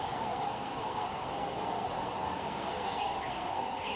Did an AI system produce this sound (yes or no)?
yes